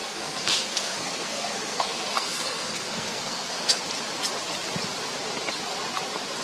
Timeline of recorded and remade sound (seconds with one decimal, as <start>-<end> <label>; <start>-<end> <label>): 0.0-3.8 remade; 3.8-6.4 recorded